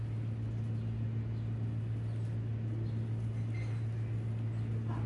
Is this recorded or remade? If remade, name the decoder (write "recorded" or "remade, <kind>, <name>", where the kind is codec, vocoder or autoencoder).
recorded